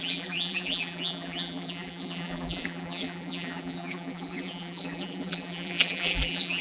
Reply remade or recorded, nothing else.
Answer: remade